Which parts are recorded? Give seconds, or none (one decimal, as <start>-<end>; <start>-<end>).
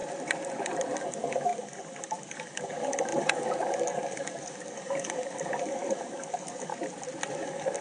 0.0-1.0; 6.7-7.3